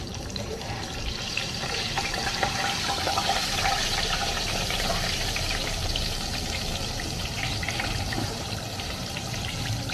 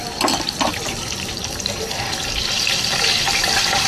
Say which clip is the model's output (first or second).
first